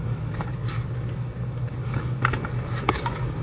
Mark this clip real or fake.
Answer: fake